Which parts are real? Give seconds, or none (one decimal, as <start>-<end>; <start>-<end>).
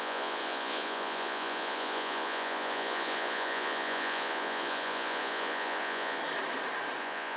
6.2-7.0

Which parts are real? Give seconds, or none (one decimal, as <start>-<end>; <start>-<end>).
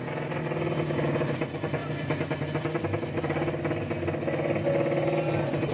0.0-5.7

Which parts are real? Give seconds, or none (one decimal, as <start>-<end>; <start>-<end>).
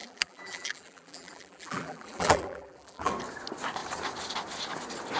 3.1-5.2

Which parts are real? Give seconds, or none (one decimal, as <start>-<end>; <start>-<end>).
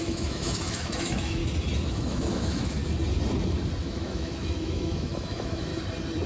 1.4-1.9; 2.8-3.8; 5.7-6.3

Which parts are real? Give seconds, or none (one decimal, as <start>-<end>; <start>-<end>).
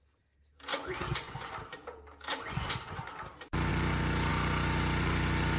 0.0-0.7; 1.5-2.3; 3.1-5.6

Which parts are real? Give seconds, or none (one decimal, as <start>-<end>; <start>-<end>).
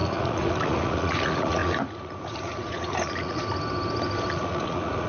3.4-4.3